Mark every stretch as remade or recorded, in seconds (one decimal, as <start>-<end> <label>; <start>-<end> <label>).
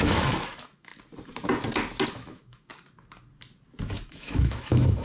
0.0-0.9 remade; 0.9-2.1 recorded; 2.1-2.7 remade; 2.7-4.1 recorded; 4.1-5.0 remade